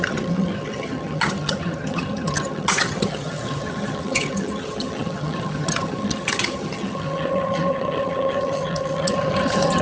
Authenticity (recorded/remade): remade